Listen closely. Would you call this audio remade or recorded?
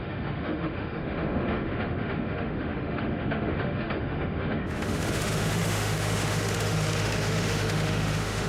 remade